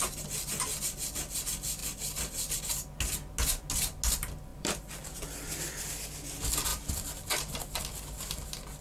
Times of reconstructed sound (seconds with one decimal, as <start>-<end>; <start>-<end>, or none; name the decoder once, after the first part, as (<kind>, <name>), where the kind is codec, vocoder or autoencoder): 1.8-2.6 (vocoder, BigVGAN v2); 4.5-5.9; 6.7-7.8